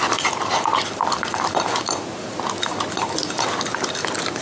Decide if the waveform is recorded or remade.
recorded